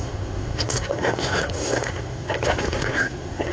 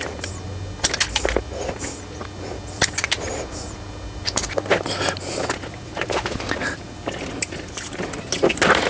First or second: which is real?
second